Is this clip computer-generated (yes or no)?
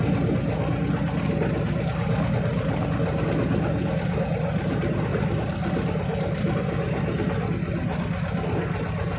no